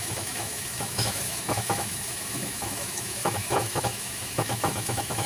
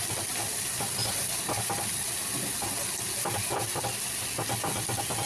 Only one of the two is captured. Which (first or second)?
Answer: second